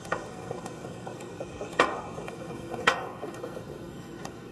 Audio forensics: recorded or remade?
remade